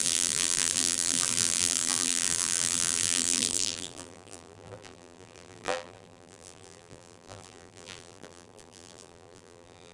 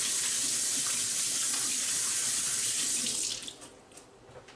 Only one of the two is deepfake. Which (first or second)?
first